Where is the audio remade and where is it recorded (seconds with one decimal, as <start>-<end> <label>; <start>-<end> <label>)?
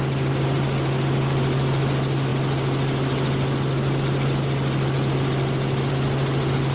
0.0-6.7 recorded